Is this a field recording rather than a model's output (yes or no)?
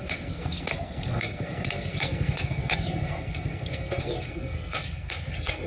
no